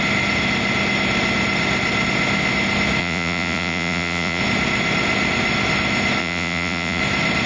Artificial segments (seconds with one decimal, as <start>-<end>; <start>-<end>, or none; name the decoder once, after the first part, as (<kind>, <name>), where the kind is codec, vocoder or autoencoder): 3.0-4.4 (vocoder, Vocos); 6.2-7.0